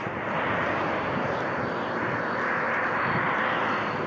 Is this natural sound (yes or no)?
yes